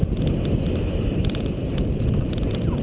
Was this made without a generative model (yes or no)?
yes